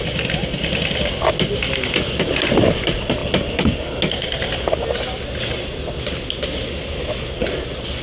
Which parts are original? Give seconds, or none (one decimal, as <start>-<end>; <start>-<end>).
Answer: 0.0-8.0